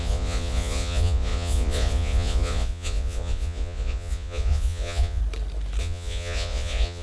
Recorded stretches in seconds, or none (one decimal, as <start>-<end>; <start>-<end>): 5.2-5.8